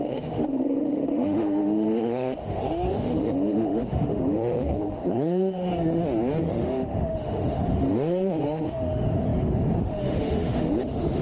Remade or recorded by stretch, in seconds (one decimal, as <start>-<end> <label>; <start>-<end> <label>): 0.0-5.7 remade; 5.7-6.4 recorded; 6.4-11.2 remade